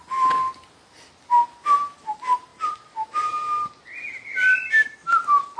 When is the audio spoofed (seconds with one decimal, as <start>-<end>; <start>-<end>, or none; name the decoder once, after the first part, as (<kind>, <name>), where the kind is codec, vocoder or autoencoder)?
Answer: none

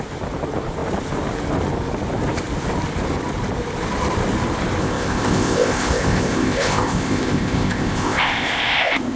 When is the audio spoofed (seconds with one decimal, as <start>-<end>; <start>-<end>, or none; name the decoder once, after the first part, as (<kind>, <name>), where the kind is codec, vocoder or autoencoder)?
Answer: 4.8-9.2 (codec, ZipCodec)

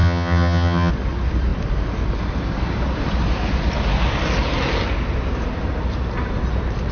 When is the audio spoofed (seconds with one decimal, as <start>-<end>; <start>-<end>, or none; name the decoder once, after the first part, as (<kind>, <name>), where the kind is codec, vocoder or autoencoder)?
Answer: 0.0-0.9 (vocoder, HiFi-GAN)

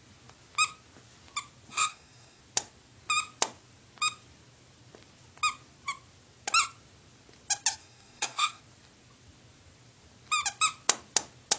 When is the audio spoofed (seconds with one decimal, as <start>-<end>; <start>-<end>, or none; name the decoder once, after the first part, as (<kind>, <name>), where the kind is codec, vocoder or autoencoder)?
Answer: 1.7-2.4 (codec, DAC); 7.8-8.6

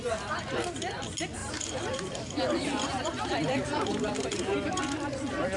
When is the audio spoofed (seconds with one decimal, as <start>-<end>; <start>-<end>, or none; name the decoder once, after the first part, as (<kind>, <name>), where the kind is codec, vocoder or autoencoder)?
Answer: 1.4-4.8 (vocoder, BigVGAN v2)